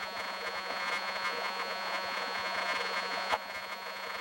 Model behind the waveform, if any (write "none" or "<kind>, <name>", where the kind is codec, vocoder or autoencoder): vocoder, Vocos